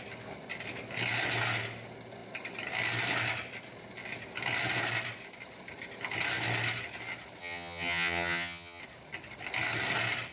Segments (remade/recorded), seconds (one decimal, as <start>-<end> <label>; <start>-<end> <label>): 0.0-7.4 recorded; 7.4-8.8 remade; 8.8-10.3 recorded